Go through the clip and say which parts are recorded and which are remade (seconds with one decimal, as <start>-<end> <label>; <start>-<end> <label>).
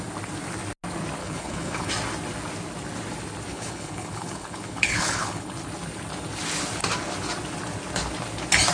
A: 0.0-1.2 recorded; 1.2-1.9 remade; 1.9-3.5 recorded; 3.5-5.6 remade; 5.6-8.7 recorded